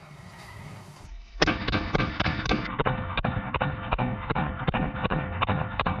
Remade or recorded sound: remade